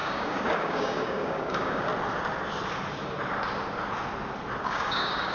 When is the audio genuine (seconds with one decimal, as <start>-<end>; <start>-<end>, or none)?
1.9-4.6